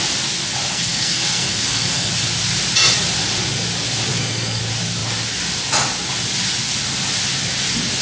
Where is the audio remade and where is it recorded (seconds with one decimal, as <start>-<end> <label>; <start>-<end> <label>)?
0.0-0.7 recorded; 0.7-2.1 remade; 2.1-4.1 recorded; 4.1-4.6 remade; 4.6-8.0 recorded